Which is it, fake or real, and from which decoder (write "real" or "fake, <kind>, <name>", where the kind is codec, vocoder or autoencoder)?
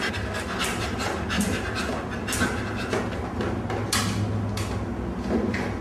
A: real